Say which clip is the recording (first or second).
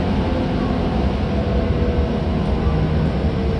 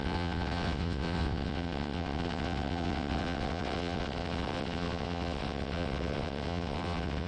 first